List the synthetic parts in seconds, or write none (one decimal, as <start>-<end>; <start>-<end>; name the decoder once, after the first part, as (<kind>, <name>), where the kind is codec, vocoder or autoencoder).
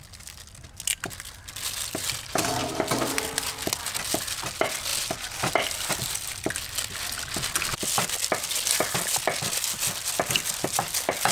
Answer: none